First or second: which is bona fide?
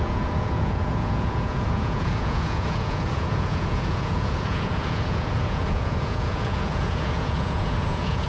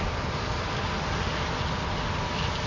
second